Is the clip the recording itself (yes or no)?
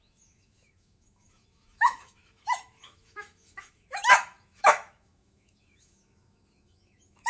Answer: no